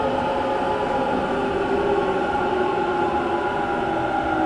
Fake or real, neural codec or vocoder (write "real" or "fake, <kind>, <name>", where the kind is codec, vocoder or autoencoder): real